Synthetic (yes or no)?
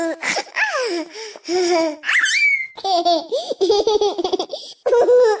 no